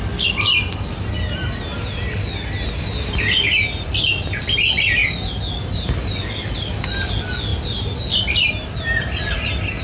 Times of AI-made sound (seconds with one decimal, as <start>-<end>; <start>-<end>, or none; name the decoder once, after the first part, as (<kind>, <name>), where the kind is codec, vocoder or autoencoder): none